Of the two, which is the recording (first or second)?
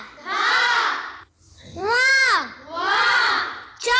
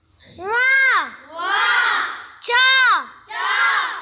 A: second